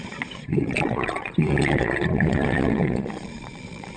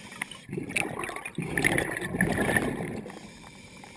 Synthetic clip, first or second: first